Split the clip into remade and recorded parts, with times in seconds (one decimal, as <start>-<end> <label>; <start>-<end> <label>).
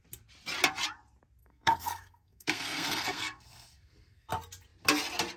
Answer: 0.0-1.4 recorded; 1.4-4.3 remade; 4.3-5.4 recorded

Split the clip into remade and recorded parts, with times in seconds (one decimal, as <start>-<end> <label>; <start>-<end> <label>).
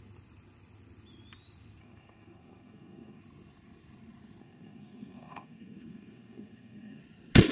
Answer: 0.0-1.8 recorded; 1.8-3.2 remade; 3.2-4.4 recorded; 4.4-7.0 remade; 7.0-7.5 recorded